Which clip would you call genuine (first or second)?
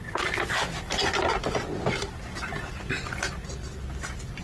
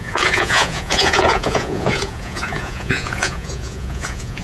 first